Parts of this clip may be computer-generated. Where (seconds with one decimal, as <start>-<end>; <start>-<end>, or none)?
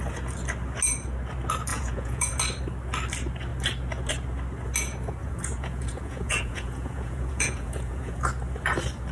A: 1.7-2.4; 5.2-8.2